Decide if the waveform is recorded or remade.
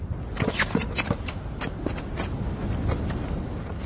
recorded